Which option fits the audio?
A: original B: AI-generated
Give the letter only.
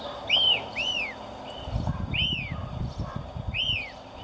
A